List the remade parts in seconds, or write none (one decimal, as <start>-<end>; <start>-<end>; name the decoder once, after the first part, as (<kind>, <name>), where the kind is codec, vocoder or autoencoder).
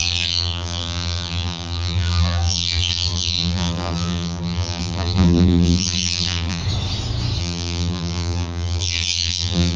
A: 0.0-6.6 (vocoder, BigVGAN v2); 7.4-9.8